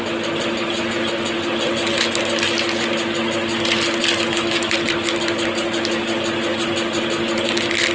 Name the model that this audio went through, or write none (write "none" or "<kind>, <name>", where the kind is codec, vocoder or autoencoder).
none